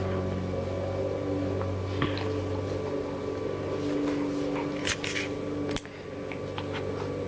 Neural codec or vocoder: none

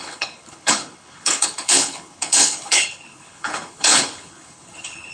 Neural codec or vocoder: codec, HILCodec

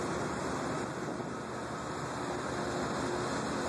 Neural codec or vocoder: none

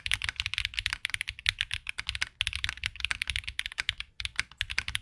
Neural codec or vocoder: none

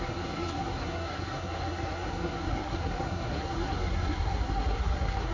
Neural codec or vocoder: codec, SNAC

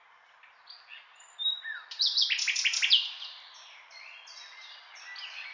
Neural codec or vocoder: none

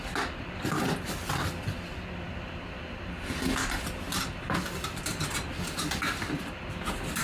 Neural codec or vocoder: none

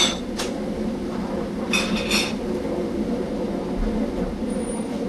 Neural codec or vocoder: none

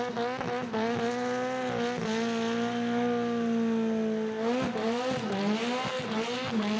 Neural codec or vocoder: none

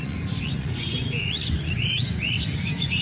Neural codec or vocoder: vocoder, Vocos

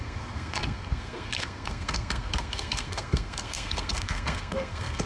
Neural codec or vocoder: codec, SNAC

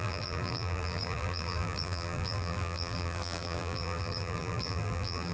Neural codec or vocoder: vocoder, BigVGAN v2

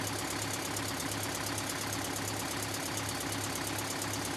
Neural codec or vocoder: none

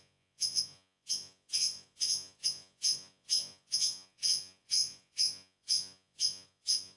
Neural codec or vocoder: vocoder, Vocos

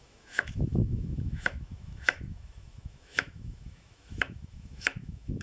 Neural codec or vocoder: autoencoder, DAC-VAE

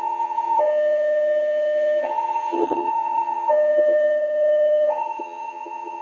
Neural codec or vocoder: vocoder, HiFi-GAN